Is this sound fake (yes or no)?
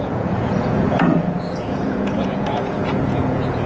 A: yes